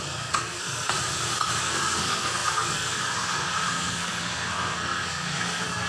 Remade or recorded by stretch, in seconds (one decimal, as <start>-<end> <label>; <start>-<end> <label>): 0.0-0.9 remade; 0.9-1.6 recorded; 1.6-5.9 remade